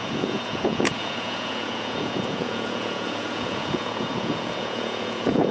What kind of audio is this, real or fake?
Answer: fake